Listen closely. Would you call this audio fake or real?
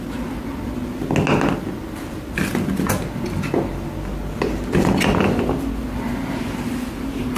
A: real